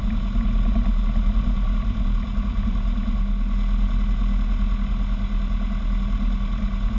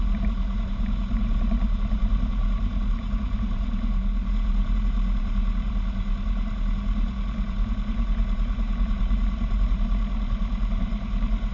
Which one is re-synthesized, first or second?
second